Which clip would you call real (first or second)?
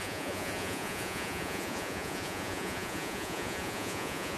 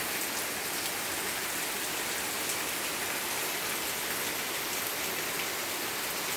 second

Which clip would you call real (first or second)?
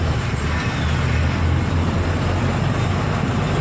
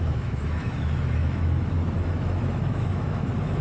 first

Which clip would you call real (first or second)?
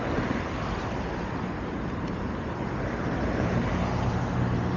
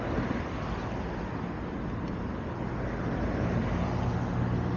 second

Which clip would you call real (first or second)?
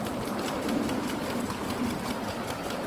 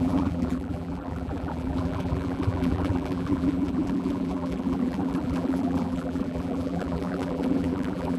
first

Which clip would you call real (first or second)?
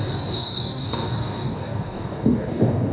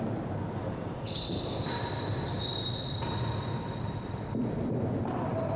second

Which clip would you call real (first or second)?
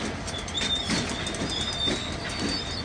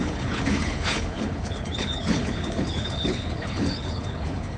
first